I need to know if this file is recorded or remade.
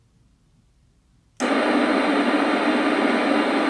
recorded